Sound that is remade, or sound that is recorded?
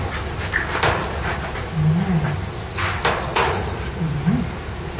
recorded